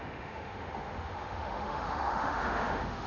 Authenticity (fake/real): fake